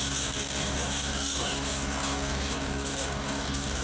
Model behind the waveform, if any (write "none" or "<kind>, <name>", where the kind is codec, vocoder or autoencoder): codec, DAC